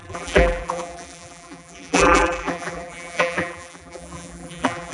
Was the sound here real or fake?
fake